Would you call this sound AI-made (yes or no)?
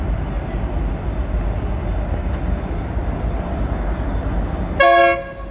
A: no